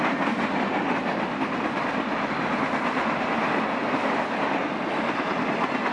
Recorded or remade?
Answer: recorded